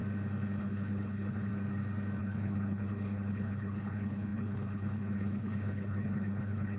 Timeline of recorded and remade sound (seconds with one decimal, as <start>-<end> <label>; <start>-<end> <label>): 0.0-0.6 recorded; 0.6-1.5 remade; 1.5-2.2 recorded; 2.2-6.8 remade